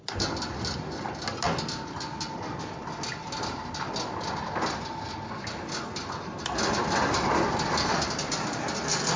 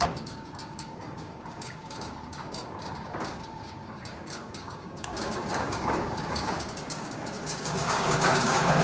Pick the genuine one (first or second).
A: first